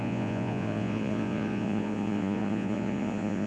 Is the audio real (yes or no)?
no